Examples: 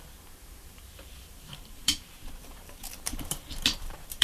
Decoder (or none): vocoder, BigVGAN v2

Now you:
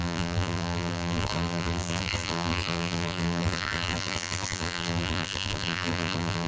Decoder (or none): vocoder, BigVGAN v2